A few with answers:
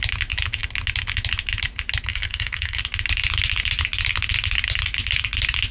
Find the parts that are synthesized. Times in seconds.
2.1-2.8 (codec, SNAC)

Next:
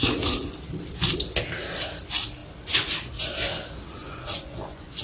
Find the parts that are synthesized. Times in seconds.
4.0-5.0 (vocoder, Vocos)

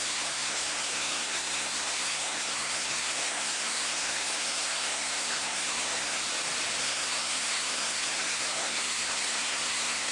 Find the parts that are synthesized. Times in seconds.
0.0-6.2 (codec, SNAC); 6.8-10.1

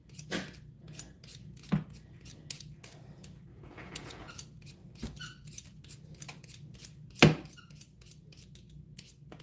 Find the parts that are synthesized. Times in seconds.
3.5-4.3 (vocoder, Vocos)

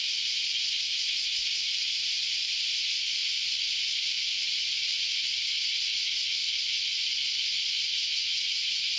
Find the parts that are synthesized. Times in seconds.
6.4-9.0 (vocoder, BigVGAN v2)

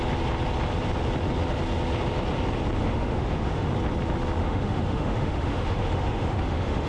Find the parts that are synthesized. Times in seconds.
2.8-3.7 (autoencoder, DAC-VAE); 4.4-6.9